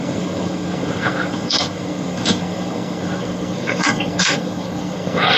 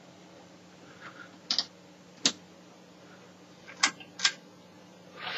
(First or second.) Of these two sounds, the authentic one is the second